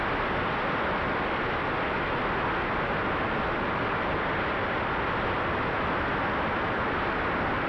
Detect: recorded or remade recorded